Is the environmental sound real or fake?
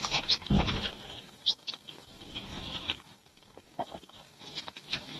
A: fake